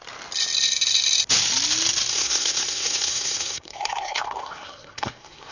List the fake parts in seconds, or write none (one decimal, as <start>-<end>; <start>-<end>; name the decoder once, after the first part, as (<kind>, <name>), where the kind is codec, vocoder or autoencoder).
2.1-5.5 (codec, SNAC)